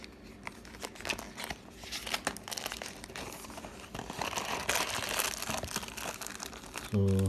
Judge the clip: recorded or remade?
recorded